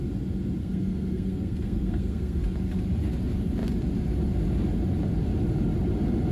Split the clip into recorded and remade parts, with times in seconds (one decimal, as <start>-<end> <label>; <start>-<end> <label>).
0.0-0.6 recorded; 0.6-2.4 remade; 2.4-6.3 recorded